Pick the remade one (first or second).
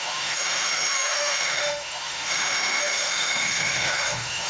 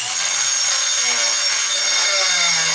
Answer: first